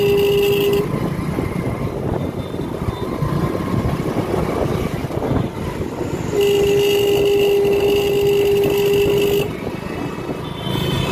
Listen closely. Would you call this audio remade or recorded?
recorded